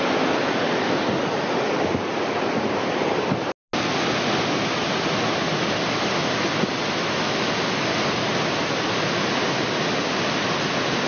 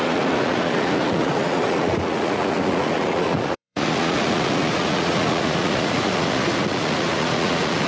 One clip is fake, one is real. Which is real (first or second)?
first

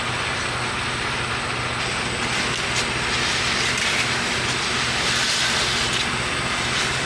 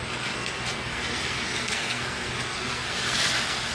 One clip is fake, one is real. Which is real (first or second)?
first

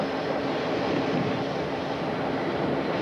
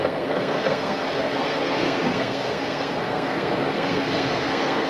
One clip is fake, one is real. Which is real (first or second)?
first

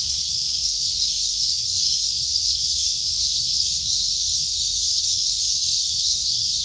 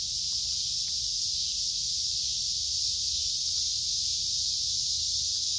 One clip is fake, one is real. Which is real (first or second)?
second